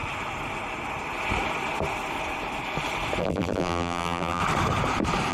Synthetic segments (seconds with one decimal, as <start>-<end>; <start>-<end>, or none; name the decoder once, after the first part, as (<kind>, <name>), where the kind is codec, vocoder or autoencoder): 3.2-4.4 (vocoder, BigVGAN v2)